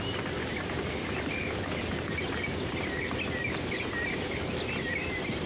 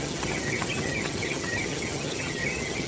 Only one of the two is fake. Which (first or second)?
second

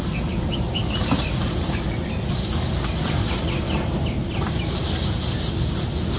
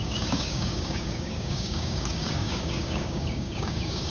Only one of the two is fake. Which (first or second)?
second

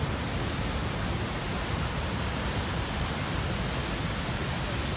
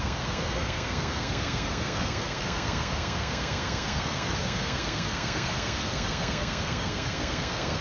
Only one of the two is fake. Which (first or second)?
second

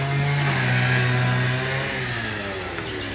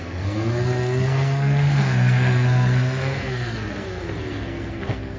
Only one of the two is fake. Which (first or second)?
second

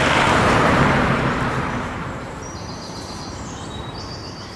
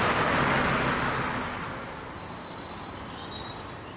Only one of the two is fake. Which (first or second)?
first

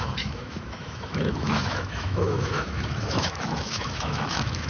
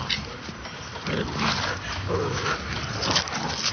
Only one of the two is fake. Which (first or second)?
first